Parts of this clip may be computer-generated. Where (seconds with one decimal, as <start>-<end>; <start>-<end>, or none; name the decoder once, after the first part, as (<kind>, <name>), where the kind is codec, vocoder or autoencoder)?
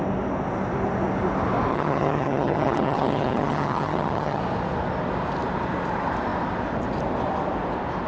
1.7-4.4 (vocoder, HiFi-GAN)